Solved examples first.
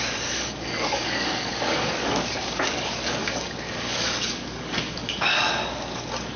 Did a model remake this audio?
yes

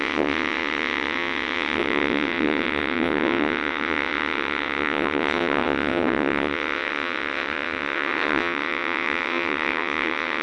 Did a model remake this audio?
yes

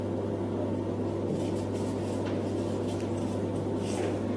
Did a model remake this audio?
no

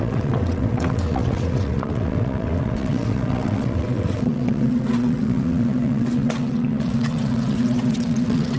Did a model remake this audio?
yes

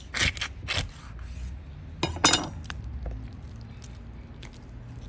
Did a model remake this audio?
no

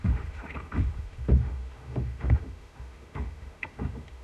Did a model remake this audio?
yes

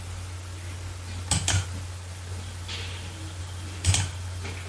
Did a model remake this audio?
no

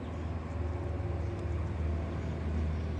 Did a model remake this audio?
no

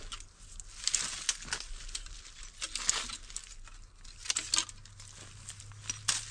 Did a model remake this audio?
no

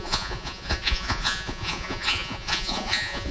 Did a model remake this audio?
yes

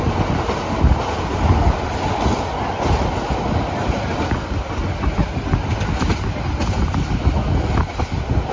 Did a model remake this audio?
no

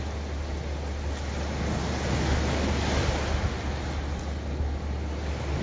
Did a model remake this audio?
no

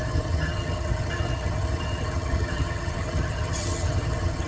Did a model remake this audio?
yes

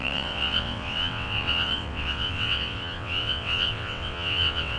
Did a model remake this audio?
yes